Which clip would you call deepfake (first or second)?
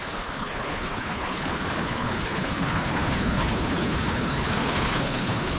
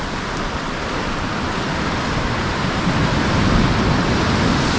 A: first